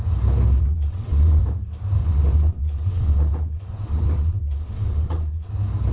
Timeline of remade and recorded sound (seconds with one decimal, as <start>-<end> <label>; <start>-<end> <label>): 0.0-0.6 recorded; 0.6-1.4 remade; 1.4-2.0 recorded; 2.0-5.5 remade; 5.5-5.9 recorded

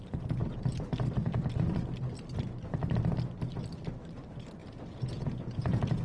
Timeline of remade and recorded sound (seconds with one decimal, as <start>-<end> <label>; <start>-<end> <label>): 0.0-4.6 recorded; 4.6-6.0 remade

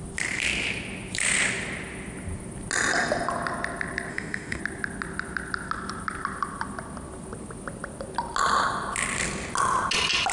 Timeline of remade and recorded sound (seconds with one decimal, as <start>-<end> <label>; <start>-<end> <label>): 0.0-4.1 recorded; 4.1-4.6 remade; 4.6-10.3 recorded

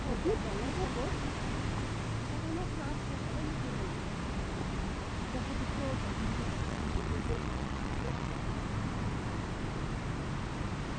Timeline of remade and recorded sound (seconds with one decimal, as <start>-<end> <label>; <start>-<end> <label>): 0.0-6.6 recorded; 6.6-8.4 remade; 8.4-11.0 recorded

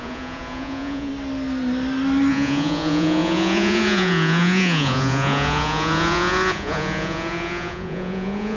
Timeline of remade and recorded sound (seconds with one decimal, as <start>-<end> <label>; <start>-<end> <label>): 0.0-1.1 remade; 1.1-2.3 recorded; 2.3-8.6 remade

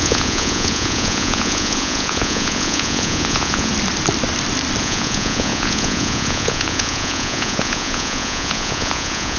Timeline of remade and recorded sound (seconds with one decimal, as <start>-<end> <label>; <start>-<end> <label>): 0.0-3.7 remade; 3.7-4.8 recorded; 4.8-9.4 remade